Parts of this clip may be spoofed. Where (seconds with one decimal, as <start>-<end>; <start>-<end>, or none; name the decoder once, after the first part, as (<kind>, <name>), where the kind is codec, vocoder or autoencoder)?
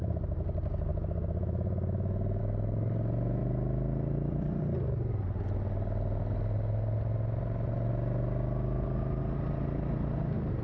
0.9-2.4 (autoencoder, DAC-VAE)